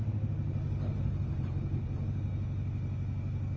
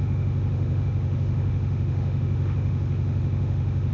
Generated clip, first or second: second